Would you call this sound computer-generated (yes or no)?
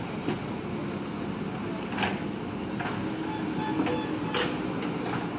no